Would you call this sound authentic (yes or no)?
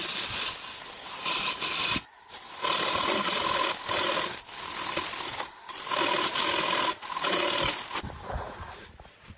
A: yes